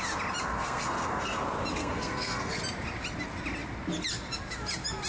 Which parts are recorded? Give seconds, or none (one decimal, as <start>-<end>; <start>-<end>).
0.0-0.5; 1.4-1.8; 2.6-5.1